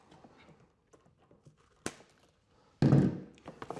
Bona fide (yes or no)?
yes